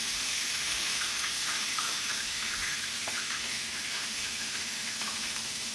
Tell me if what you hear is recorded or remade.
remade